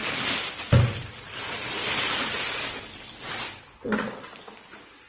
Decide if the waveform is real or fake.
real